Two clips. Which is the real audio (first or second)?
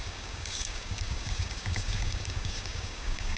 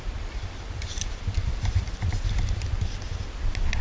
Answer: second